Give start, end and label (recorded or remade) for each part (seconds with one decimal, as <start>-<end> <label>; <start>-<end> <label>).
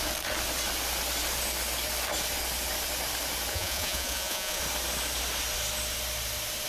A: 0.0-3.5 recorded; 3.5-4.6 remade; 4.6-6.7 recorded